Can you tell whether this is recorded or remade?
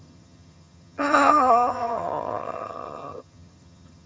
remade